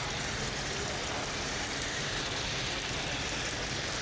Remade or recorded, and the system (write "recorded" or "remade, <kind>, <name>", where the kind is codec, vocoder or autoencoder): recorded